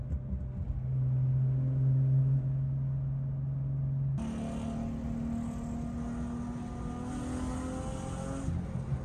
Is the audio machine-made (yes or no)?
no